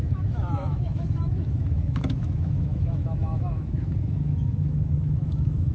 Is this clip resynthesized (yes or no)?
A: yes